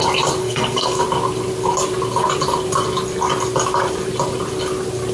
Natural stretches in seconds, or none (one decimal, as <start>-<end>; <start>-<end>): 0.0-0.4; 1.0-5.1